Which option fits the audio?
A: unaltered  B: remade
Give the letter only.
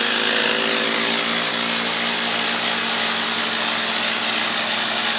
A